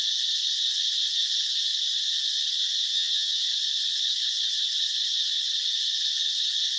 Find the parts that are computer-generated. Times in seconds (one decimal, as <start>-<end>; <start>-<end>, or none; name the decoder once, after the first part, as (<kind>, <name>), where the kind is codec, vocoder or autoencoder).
2.9-3.4 (vocoder, HiFi-GAN)